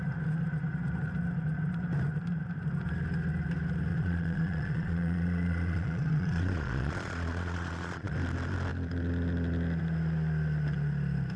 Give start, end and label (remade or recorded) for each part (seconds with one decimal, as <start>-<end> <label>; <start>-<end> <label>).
0.0-3.9 recorded; 3.9-8.1 remade; 8.1-11.4 recorded